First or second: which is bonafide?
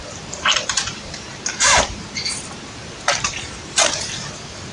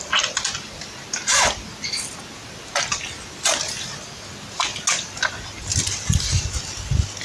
second